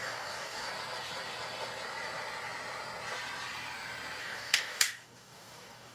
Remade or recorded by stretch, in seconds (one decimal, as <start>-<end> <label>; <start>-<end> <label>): 0.0-0.7 remade; 0.7-4.2 recorded; 4.2-5.9 remade